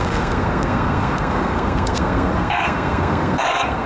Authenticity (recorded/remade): remade